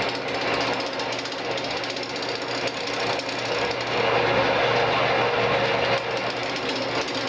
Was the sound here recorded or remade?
recorded